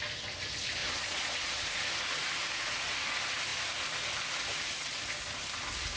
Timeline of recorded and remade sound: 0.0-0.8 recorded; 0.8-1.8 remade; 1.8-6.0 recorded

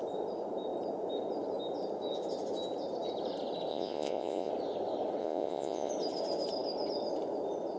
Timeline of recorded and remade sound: 0.0-3.7 recorded; 3.7-4.5 remade; 4.5-5.2 recorded; 5.2-5.9 remade; 5.9-7.8 recorded

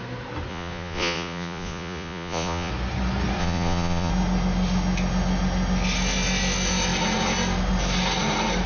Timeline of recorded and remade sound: 0.0-0.5 recorded; 0.5-2.7 remade; 2.7-3.4 recorded; 3.4-4.1 remade; 4.1-8.7 recorded

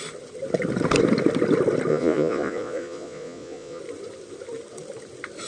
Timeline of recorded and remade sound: 0.0-1.9 recorded; 1.9-3.8 remade; 3.8-5.5 recorded

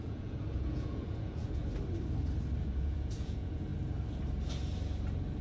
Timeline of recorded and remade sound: 0.0-1.6 remade; 1.6-2.6 recorded; 2.6-3.7 remade; 3.7-5.4 recorded

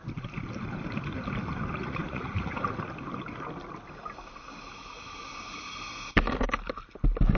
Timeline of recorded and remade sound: 0.0-1.8 recorded; 1.8-2.6 remade; 2.6-7.4 recorded

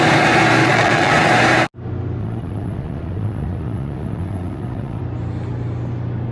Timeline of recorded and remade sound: 0.0-0.6 recorded; 0.6-1.1 remade; 1.1-2.2 recorded; 2.2-5.0 remade; 5.0-6.3 recorded

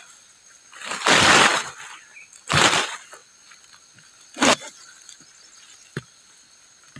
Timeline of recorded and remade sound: 0.0-7.0 recorded